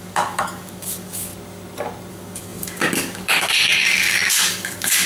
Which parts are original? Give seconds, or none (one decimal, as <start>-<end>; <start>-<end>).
1.3-2.1